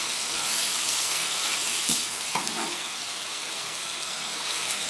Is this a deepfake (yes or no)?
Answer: yes